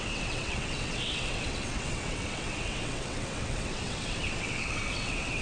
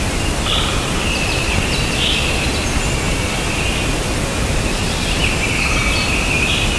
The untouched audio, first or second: second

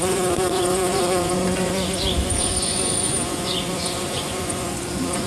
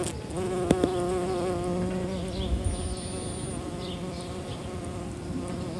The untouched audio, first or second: second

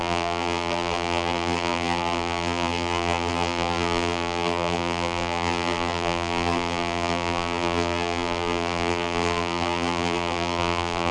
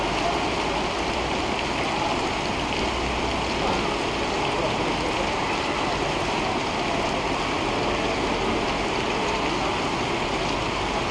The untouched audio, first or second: second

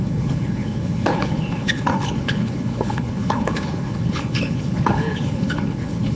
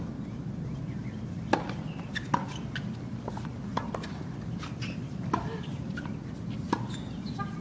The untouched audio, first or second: second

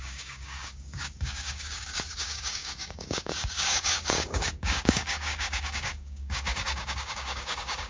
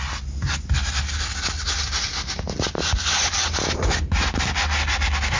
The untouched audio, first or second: second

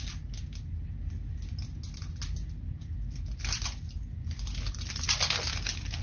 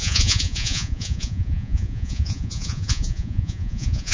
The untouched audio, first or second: first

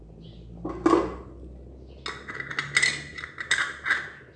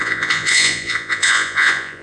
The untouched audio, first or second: first